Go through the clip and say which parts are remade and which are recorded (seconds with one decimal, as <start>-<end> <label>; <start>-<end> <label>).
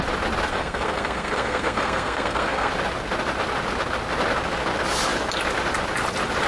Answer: 0.0-0.5 recorded; 0.5-2.7 remade; 2.7-6.5 recorded